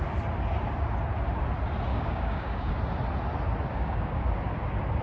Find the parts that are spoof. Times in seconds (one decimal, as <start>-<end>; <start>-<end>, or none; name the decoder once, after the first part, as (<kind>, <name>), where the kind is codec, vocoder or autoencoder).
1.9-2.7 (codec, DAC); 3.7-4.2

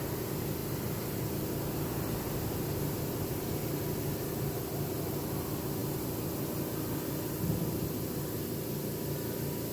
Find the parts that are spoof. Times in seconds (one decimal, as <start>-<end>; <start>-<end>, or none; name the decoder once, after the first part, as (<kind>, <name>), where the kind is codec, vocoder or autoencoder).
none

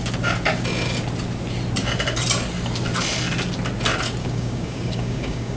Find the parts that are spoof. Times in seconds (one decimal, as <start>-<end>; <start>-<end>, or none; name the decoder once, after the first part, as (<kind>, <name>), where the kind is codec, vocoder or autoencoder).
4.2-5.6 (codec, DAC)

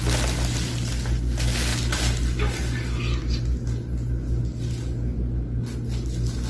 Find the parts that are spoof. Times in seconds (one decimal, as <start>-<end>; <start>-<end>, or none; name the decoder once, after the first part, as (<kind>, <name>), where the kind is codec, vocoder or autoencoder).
none

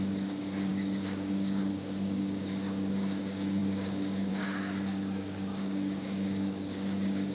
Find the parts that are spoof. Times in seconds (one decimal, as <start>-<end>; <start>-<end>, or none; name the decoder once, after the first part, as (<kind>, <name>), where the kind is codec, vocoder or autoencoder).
0.0-7.3 (codec, DAC)